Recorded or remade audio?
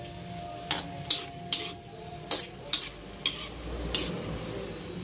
recorded